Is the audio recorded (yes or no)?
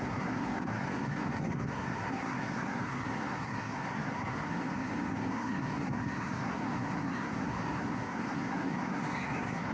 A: no